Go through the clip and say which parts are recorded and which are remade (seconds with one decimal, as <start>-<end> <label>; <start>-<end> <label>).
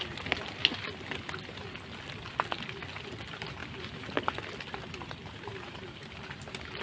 0.0-6.8 recorded